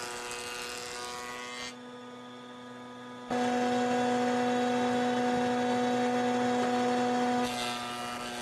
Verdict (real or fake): real